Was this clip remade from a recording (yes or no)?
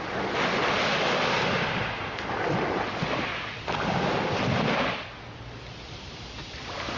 no